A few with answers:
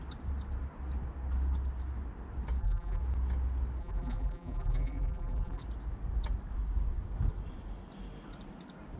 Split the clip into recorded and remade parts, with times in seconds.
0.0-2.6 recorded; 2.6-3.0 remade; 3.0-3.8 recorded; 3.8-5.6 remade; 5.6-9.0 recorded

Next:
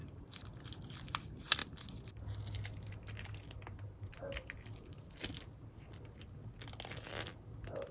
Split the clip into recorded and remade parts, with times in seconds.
0.0-0.5 remade; 0.5-7.9 recorded

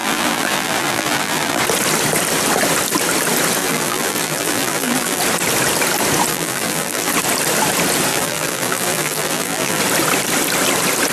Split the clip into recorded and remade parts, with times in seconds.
0.0-1.6 remade; 1.6-3.6 recorded; 3.6-5.2 remade; 5.2-6.3 recorded; 6.3-7.1 remade; 7.1-8.1 recorded; 8.1-9.8 remade; 9.8-11.1 recorded

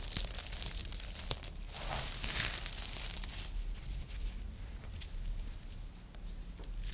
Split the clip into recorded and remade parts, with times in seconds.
0.0-0.8 recorded; 0.8-4.9 remade; 4.9-6.9 recorded

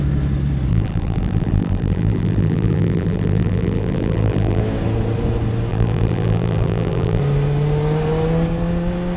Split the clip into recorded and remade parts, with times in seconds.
0.0-0.7 recorded; 0.7-4.6 remade; 4.6-5.7 recorded; 5.7-7.2 remade; 7.2-9.2 recorded

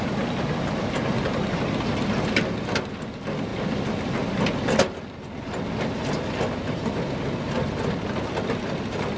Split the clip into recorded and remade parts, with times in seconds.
0.0-9.2 recorded